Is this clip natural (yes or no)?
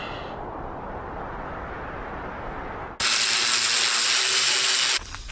yes